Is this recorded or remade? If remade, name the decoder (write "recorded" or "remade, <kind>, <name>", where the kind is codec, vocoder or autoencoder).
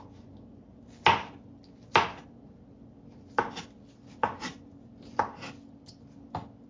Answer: recorded